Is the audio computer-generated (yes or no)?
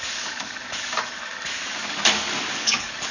yes